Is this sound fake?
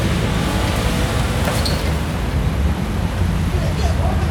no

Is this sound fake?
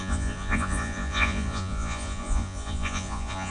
yes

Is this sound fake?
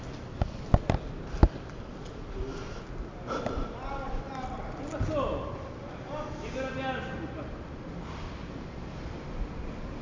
no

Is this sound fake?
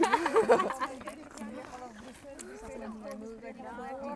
no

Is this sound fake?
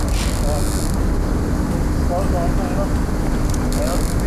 no